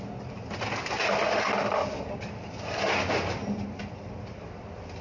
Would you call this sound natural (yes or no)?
yes